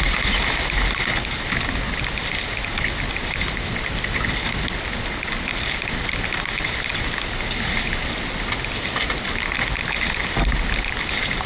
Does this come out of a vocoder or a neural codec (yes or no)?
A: no